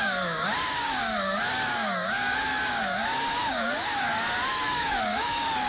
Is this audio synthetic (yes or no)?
yes